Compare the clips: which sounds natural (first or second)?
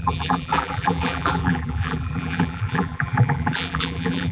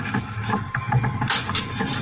second